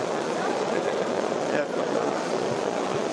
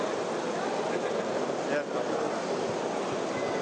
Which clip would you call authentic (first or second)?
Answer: second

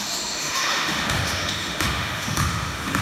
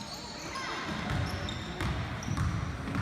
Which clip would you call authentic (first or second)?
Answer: second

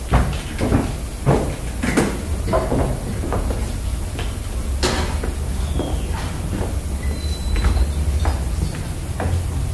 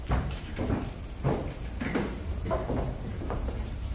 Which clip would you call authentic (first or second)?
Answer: first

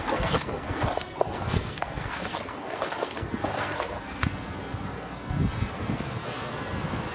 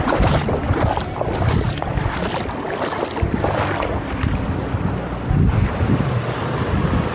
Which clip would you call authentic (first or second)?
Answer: second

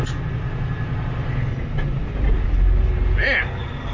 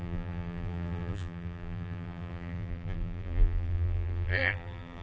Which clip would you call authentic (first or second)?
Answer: first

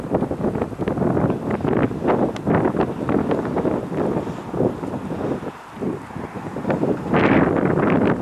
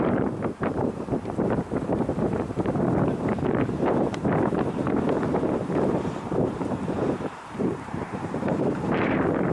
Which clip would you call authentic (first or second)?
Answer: first